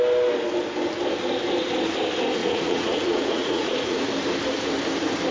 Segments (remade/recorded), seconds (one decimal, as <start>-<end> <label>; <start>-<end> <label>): 0.0-2.4 recorded; 2.4-4.1 remade; 4.1-5.3 recorded